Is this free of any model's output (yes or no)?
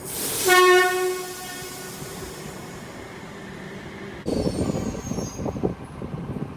no